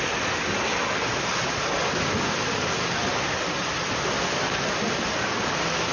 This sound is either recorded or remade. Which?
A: recorded